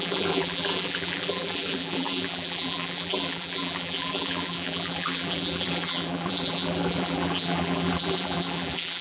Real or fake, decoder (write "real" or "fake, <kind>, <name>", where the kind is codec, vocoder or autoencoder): fake, vocoder, BigVGAN v2